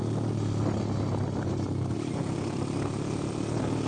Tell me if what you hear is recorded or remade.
recorded